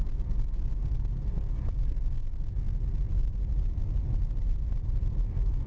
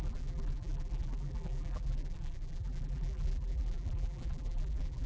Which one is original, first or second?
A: first